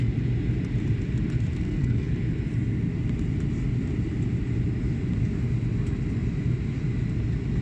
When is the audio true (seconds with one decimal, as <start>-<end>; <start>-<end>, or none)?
0.0-1.5; 2.1-7.6